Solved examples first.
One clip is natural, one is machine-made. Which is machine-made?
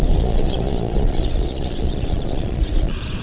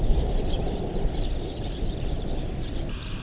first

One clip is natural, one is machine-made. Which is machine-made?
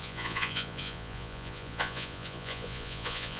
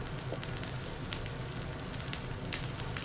first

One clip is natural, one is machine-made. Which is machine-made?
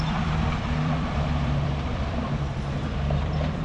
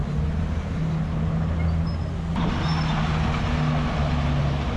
first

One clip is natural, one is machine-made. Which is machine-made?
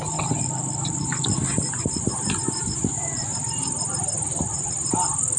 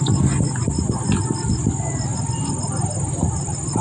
first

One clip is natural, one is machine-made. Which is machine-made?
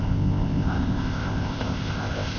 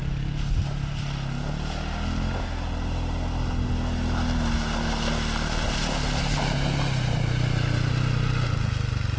first